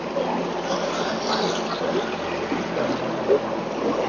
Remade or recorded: recorded